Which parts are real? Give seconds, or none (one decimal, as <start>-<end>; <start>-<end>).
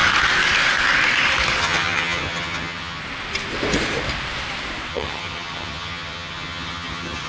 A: 0.0-1.6; 3.0-4.9